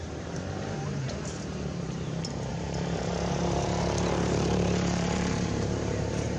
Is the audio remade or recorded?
remade